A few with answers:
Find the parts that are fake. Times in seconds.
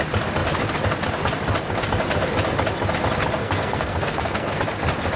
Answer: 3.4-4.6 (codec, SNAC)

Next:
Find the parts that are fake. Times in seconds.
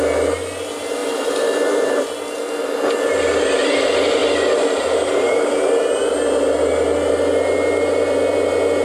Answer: none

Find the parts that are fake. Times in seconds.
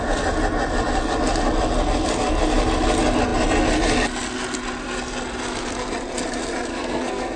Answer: 6.7-7.4 (codec, SNAC)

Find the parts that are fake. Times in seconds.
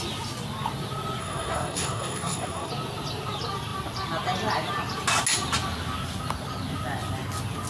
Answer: 1.2-2.7 (codec, SNAC)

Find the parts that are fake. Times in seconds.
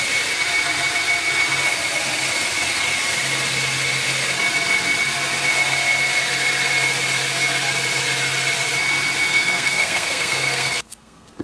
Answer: 9.3-11.4 (codec, SNAC)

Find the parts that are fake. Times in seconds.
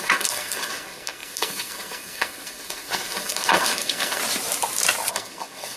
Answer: 0.0-4.2 (codec, SNAC); 5.1-5.8